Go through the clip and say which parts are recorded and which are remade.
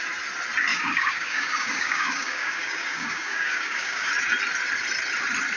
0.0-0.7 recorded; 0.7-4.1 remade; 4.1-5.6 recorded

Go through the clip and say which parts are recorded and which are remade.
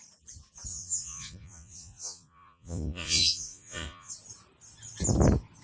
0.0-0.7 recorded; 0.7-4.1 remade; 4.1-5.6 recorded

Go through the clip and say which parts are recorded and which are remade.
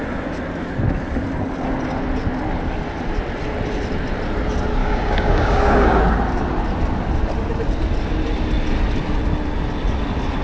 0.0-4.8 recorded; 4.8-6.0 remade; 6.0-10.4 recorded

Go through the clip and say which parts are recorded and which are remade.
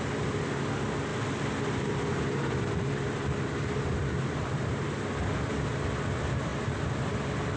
0.0-1.1 recorded; 1.1-4.9 remade; 4.9-7.6 recorded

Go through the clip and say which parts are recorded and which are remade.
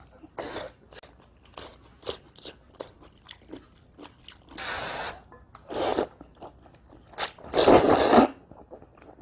0.0-9.2 recorded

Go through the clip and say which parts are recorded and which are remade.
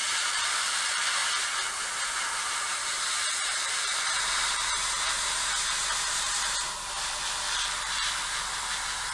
0.0-1.2 remade; 1.2-2.4 recorded; 2.4-9.1 remade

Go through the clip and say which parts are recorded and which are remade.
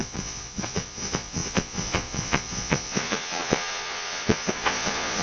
0.0-5.2 remade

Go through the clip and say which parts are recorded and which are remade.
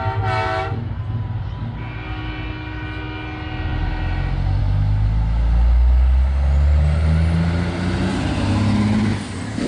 0.0-9.7 recorded